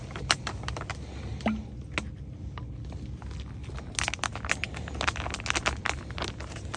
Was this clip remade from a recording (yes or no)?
no